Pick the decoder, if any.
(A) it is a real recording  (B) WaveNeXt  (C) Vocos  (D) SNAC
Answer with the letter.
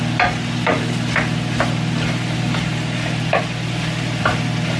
A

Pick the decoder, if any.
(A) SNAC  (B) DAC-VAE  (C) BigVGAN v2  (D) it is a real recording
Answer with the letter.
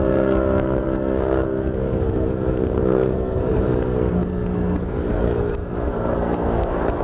A